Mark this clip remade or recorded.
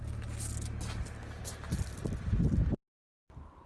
recorded